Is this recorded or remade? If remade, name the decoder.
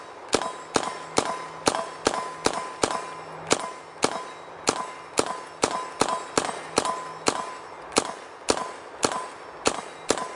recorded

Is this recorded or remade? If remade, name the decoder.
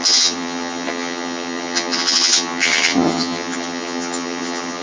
remade, vocoder, HiFi-GAN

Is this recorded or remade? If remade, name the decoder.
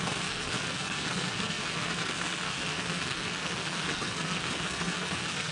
remade, codec, SNAC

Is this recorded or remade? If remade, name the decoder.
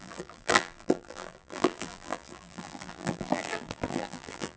remade, vocoder, BigVGAN v2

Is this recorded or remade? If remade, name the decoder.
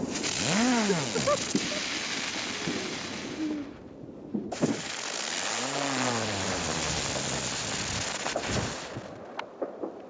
recorded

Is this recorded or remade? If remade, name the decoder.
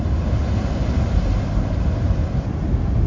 recorded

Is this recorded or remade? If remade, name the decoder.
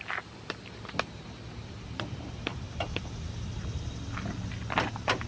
recorded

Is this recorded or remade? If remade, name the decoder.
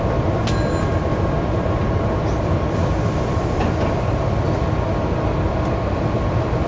recorded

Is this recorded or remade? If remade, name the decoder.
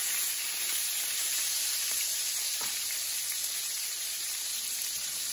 remade, vocoder, BigVGAN v2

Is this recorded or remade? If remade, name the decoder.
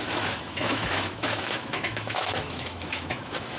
remade, autoencoder, DAC-VAE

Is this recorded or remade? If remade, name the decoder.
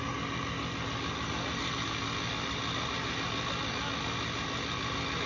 recorded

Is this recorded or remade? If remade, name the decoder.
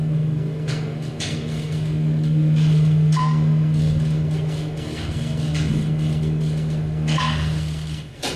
remade, codec, SNAC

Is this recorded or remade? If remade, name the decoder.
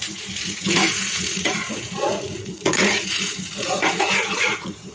remade, vocoder, Vocos